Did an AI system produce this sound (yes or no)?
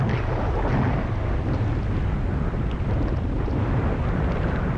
no